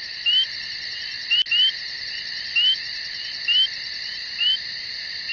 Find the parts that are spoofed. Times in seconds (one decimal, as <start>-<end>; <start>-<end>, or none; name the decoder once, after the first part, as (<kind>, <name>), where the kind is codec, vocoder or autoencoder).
none